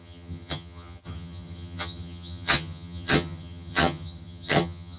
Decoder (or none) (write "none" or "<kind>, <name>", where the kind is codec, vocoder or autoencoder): vocoder, HiFi-GAN